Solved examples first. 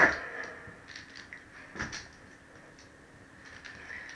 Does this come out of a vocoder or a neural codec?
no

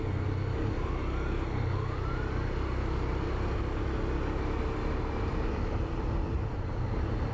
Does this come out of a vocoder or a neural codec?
no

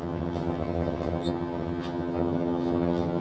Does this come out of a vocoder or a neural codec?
yes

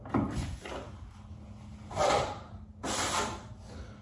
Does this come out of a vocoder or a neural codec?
no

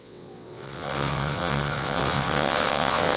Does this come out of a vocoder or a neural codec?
yes